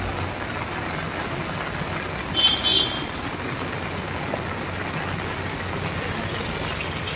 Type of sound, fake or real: real